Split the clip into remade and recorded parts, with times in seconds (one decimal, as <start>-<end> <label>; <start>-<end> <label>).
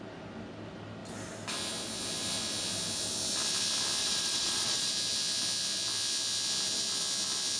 0.0-4.0 recorded; 4.0-4.9 remade; 4.9-7.6 recorded